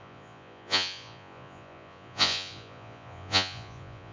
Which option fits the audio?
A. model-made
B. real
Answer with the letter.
A